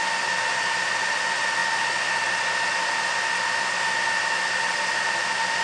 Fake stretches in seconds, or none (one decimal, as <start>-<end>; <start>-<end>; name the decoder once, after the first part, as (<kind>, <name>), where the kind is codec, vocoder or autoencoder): none